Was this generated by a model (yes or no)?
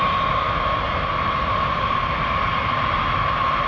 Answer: no